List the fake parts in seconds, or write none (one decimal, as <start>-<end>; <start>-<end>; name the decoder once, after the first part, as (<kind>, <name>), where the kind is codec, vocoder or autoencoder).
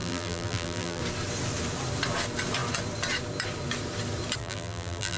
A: 0.0-1.0 (vocoder, BigVGAN v2); 4.4-5.2